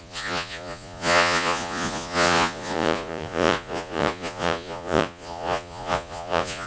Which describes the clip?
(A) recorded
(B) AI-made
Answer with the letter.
B